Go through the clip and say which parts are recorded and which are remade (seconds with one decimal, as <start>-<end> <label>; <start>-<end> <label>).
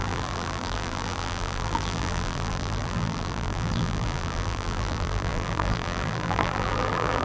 0.0-7.2 remade